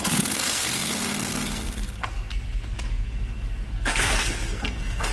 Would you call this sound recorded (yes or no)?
no